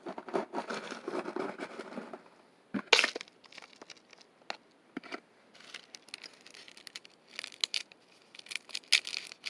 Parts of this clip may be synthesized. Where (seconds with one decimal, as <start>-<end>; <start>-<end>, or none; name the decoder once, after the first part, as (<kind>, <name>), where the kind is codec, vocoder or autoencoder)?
none